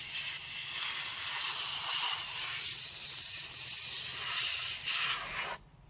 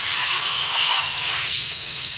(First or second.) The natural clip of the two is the first